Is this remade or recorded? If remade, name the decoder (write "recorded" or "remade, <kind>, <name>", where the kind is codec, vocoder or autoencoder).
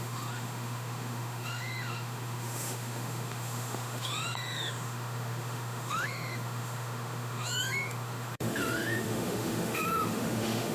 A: remade, autoencoder, DAC-VAE